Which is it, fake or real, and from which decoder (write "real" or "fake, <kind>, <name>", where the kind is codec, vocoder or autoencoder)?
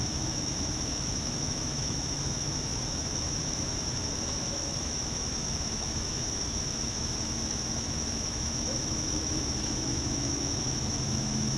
fake, autoencoder, DAC-VAE